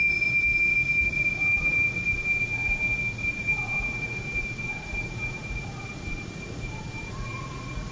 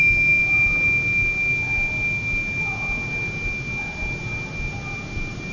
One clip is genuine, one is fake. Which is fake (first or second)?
first